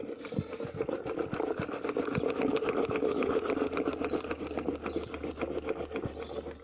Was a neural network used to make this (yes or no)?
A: no